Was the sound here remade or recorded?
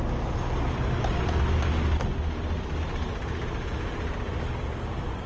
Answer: recorded